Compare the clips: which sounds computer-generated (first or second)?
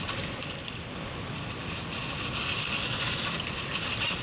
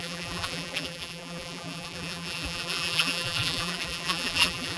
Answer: second